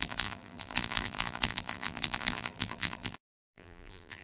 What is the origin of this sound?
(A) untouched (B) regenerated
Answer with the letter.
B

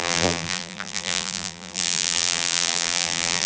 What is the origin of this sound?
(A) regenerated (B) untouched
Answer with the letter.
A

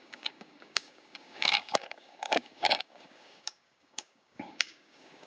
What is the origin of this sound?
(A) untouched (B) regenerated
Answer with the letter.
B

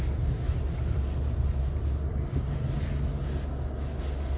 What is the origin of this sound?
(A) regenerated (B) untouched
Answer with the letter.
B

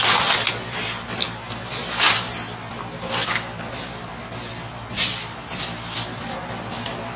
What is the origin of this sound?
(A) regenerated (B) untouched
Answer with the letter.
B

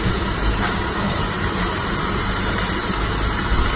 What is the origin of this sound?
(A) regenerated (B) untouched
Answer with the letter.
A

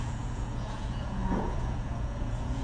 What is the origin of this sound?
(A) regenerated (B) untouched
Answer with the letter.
A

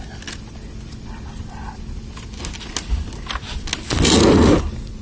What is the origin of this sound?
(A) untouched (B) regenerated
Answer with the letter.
A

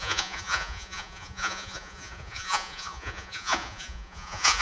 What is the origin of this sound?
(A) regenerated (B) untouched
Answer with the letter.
A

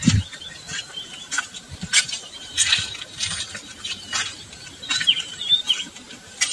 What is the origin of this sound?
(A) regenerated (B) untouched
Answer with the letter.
A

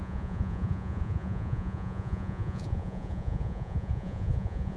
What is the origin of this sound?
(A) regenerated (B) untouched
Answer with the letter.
A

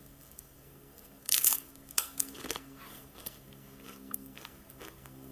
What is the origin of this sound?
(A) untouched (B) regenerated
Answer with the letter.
B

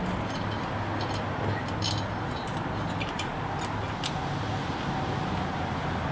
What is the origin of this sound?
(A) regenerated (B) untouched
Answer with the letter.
B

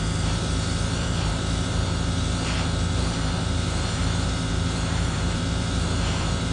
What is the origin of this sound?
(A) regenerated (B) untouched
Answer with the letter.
A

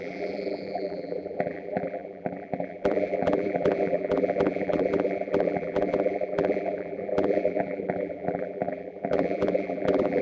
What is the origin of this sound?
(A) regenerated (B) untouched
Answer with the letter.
A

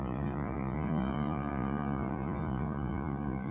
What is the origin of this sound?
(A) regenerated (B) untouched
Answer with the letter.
A